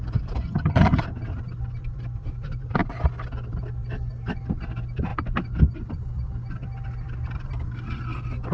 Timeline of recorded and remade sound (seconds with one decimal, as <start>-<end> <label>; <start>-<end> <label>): 0.0-0.4 recorded; 0.4-1.0 remade; 1.0-8.5 recorded